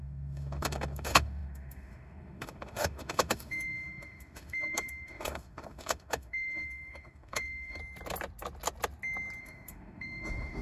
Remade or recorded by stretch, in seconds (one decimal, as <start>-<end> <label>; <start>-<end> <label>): 0.0-7.8 remade; 7.8-9.4 recorded; 9.4-10.6 remade